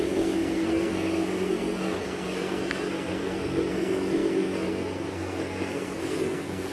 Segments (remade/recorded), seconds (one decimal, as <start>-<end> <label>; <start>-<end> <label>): 0.0-6.7 remade